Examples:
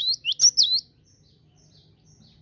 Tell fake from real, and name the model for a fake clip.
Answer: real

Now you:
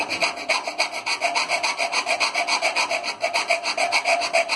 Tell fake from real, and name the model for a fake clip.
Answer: real